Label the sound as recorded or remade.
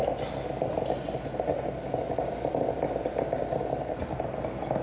recorded